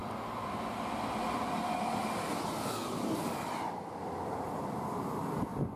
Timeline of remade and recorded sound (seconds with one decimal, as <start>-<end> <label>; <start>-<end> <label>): 0.0-5.8 recorded